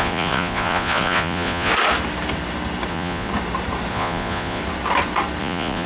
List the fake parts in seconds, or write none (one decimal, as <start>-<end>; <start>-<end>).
0.0-1.7; 2.9-3.3; 3.9-4.6; 5.4-5.9